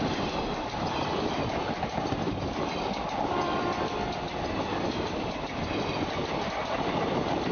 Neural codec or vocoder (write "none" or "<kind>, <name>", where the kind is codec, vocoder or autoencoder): vocoder, BigVGAN v2